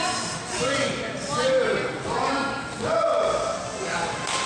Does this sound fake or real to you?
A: real